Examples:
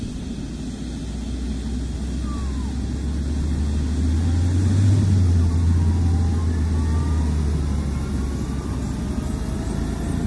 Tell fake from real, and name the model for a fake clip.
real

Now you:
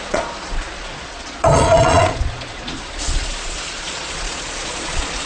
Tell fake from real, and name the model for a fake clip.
fake, vocoder, Vocos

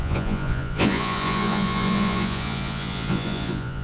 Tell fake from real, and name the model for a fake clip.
fake, vocoder, Vocos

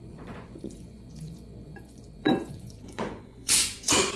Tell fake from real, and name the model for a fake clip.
fake, vocoder, Vocos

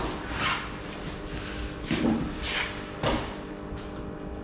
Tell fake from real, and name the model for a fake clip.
real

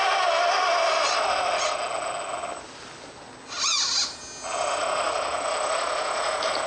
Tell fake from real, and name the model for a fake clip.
real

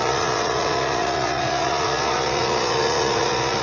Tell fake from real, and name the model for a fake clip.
fake, vocoder, Vocos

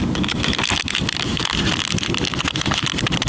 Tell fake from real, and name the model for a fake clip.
real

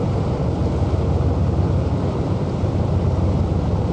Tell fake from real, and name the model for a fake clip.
real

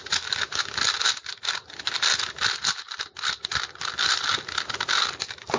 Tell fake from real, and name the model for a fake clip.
real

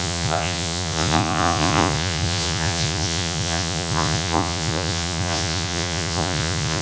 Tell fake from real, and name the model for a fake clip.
fake, vocoder, Vocos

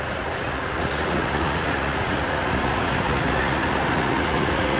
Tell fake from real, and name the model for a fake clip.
fake, vocoder, Vocos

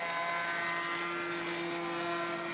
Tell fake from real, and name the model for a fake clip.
real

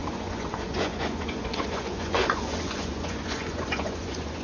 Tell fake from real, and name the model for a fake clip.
fake, vocoder, Vocos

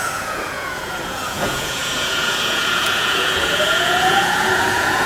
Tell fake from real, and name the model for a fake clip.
fake, vocoder, Vocos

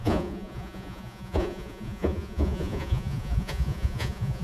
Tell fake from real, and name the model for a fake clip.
fake, vocoder, Vocos